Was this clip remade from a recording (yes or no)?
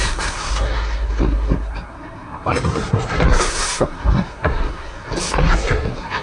yes